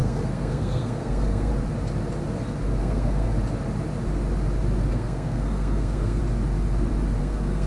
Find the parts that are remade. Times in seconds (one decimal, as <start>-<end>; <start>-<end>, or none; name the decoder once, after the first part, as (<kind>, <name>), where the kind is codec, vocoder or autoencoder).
0.0-1.5 (codec, SNAC); 2.8-3.3; 4.9-6.2; 7.2-7.7